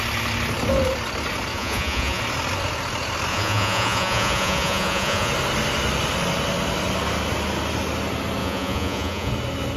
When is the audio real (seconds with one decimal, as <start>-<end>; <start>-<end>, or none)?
0.0-1.5; 2.2-3.3; 5.3-8.4; 9.3-9.8